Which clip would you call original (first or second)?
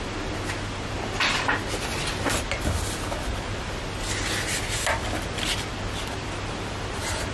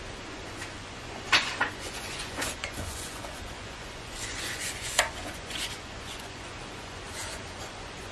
first